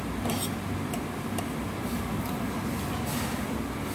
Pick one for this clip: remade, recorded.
recorded